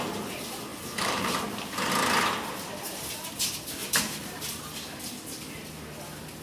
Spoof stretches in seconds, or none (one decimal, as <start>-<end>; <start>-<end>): 0.7-1.9; 3.8-4.6